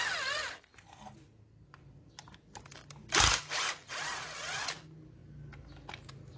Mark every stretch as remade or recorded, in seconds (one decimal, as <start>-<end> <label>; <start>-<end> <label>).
0.0-6.4 recorded